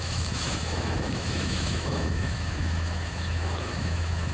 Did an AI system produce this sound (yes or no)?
yes